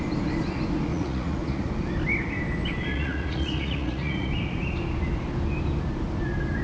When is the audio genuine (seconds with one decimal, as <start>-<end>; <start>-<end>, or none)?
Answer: 0.0-0.9; 1.7-2.9; 4.3-6.6